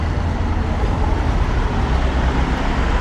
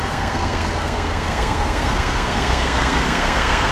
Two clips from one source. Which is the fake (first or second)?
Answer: second